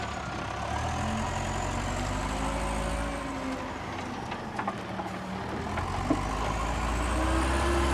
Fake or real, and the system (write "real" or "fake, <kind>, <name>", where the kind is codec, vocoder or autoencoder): real